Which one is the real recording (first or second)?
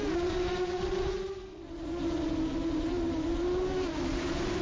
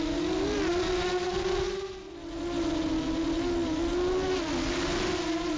second